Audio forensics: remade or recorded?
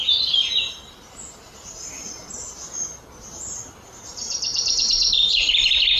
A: recorded